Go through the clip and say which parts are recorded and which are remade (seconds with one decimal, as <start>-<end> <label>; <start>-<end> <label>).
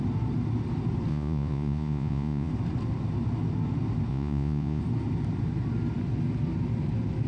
0.0-1.1 recorded; 1.1-2.5 remade; 2.5-4.1 recorded; 4.1-4.8 remade; 4.8-7.3 recorded